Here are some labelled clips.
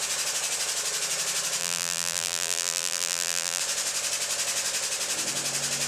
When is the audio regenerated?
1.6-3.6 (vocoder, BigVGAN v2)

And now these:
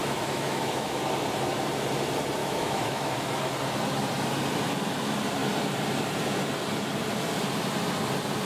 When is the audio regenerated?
0.0-1.0 (autoencoder, DAC-VAE); 2.4-3.1

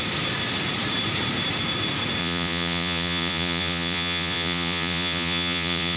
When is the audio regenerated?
2.2-6.0 (vocoder, Vocos)

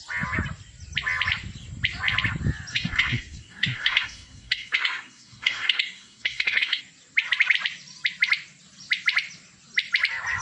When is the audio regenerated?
2.7-6.8 (codec, SNAC)

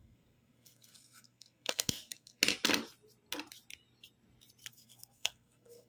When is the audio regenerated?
0.0-2.4 (codec, SNAC); 4.7-5.9

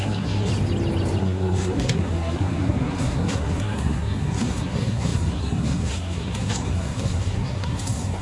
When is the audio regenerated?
0.0-0.5 (codec, SNAC); 1.2-8.2